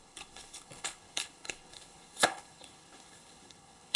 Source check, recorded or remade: remade